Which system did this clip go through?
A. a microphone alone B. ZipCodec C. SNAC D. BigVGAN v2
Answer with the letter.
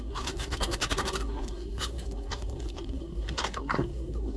C